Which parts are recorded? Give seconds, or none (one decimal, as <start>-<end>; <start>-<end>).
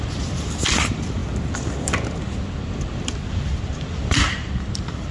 1.2-3.3